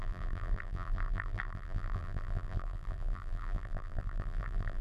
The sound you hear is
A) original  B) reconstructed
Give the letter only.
B